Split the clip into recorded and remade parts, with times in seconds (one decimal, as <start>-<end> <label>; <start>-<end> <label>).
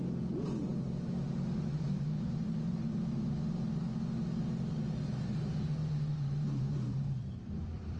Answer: 0.0-8.0 recorded